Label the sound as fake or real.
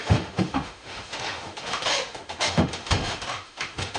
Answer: fake